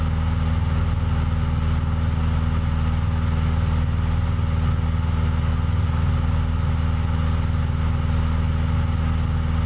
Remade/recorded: recorded